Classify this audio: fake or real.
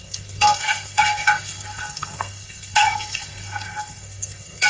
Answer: fake